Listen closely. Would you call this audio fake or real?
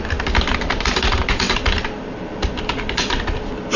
fake